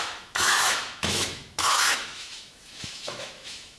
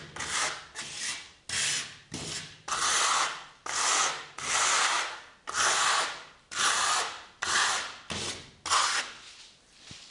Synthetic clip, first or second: first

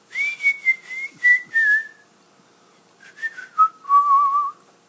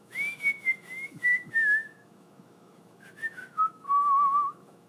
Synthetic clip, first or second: second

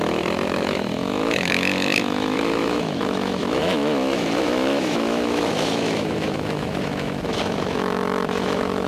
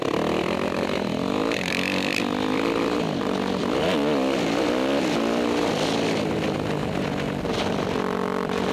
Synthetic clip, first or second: first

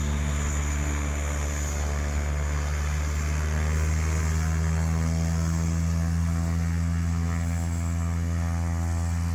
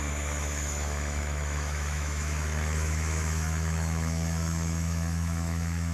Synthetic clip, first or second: second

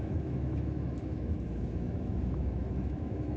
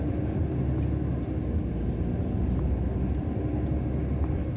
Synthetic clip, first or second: first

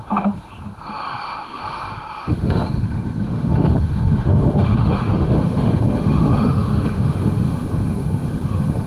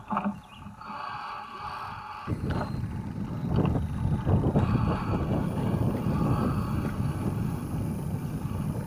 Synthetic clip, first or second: first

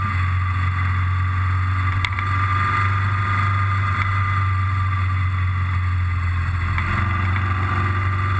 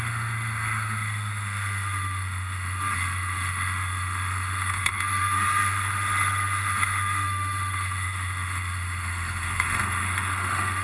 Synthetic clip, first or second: second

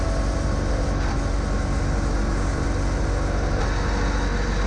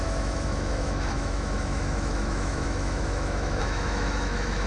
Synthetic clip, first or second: second